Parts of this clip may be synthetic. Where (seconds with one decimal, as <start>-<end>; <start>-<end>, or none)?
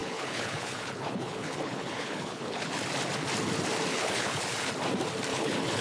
0.0-2.8; 3.9-4.7; 5.3-5.8